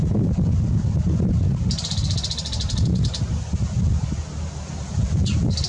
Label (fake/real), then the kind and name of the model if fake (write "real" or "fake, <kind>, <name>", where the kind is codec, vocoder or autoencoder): real